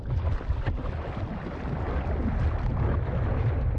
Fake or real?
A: real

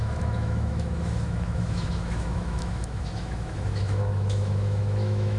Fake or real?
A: fake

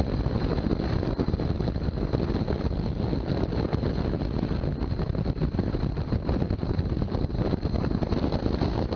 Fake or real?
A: real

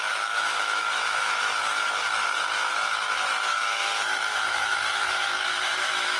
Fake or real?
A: fake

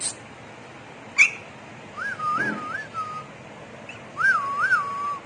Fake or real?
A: real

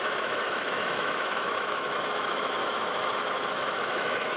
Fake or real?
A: fake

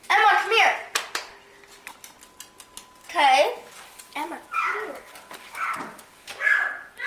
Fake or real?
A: real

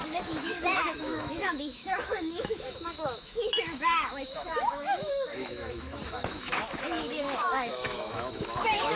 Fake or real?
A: fake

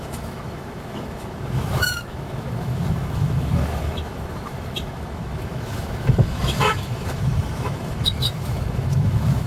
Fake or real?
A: fake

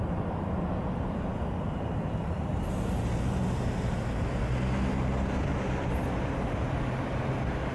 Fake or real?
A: real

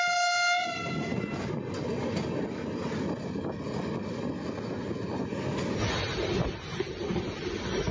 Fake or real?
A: real